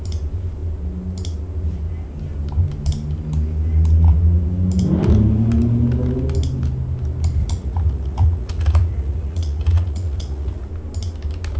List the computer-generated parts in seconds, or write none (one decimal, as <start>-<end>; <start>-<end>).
7.4-10.7